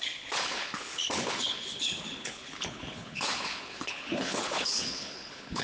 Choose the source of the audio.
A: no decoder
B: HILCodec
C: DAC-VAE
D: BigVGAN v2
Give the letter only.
B